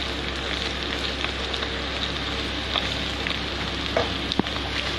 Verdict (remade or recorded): recorded